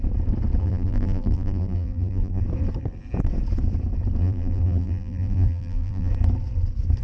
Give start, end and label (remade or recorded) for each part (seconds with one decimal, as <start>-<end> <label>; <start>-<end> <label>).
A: 0.0-0.6 recorded; 0.6-2.4 remade; 2.4-4.2 recorded; 4.2-6.1 remade; 6.1-7.0 recorded